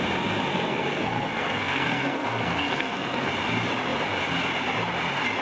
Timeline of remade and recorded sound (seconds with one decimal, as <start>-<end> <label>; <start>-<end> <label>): 0.0-0.5 recorded; 0.5-3.3 remade; 3.3-5.4 recorded